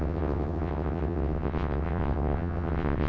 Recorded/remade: remade